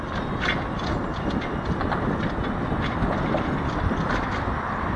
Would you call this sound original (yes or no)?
yes